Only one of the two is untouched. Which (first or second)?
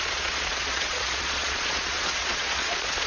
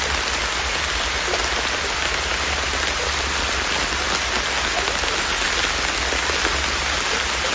second